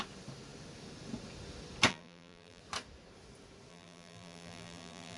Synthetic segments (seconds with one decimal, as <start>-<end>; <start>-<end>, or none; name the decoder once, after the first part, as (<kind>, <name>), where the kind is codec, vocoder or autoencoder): 1.9-2.6 (vocoder, BigVGAN v2); 3.7-5.2